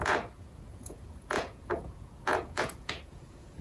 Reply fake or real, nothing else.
fake